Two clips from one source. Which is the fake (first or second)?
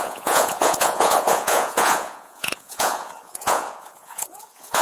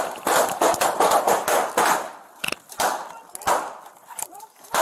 first